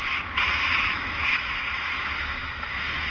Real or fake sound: fake